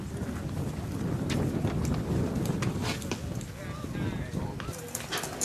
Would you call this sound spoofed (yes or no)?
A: no